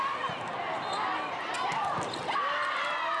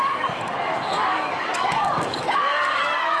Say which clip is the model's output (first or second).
second